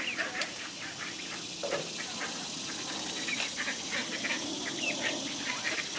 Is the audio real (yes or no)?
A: yes